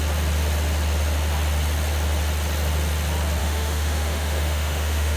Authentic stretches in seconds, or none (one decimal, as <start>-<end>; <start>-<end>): 0.0-3.4

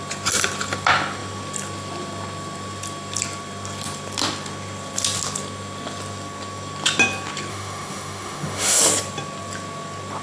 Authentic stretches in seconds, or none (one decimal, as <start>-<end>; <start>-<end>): 0.0-7.5; 8.8-10.2

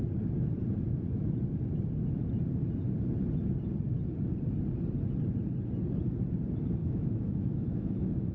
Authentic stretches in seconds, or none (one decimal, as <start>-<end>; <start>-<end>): 0.0-6.8